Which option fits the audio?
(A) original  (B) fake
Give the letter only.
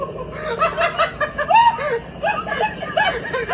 A